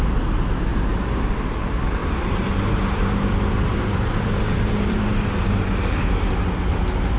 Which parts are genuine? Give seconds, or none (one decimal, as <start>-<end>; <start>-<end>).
0.0-2.0; 6.3-7.2